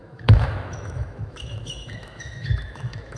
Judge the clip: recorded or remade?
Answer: remade